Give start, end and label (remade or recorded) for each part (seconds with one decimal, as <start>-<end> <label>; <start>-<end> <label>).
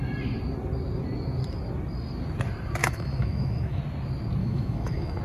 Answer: 0.0-2.8 recorded; 2.8-3.8 remade; 3.8-4.4 recorded; 4.4-5.2 remade